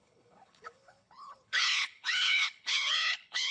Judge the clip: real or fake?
fake